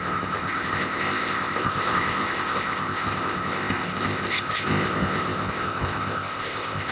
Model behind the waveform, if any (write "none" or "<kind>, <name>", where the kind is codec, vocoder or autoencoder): codec, ZipCodec